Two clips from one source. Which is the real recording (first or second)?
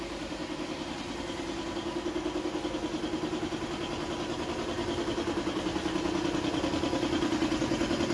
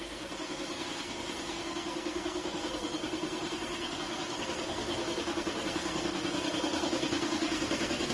first